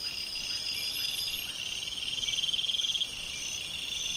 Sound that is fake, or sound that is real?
real